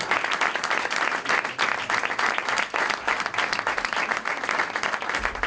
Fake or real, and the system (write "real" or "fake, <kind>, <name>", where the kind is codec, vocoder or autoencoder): real